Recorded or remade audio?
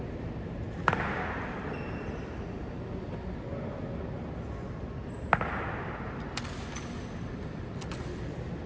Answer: recorded